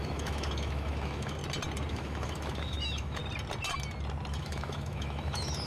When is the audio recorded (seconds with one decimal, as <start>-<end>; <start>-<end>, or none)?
1.4-1.9; 3.2-4.4